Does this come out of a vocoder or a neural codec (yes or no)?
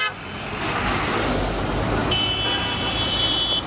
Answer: no